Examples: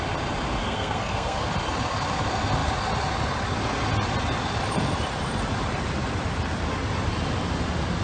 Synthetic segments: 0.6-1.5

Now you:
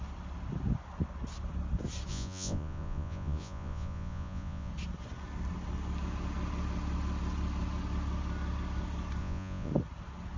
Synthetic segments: 2.1-4.7; 9.2-9.7